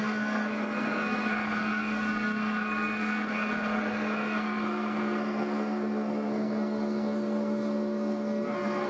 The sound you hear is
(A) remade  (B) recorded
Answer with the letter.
A